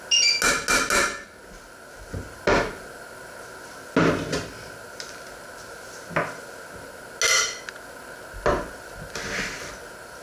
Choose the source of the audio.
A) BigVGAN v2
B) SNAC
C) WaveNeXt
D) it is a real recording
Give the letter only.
D